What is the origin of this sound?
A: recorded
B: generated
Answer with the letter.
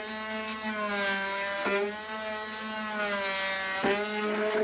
A